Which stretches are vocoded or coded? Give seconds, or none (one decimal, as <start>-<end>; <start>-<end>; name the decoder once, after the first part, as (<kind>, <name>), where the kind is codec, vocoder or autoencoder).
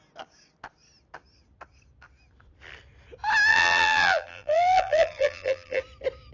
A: 3.5-5.8 (vocoder, BigVGAN v2)